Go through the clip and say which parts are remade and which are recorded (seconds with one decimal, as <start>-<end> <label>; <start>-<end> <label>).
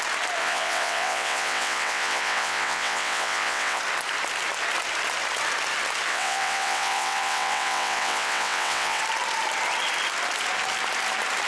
0.0-0.4 recorded; 0.4-3.8 remade; 3.8-6.1 recorded; 6.1-9.0 remade; 9.0-11.5 recorded